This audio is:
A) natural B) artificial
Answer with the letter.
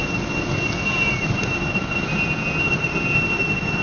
A